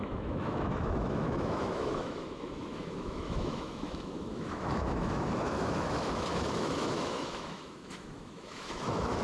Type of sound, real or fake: fake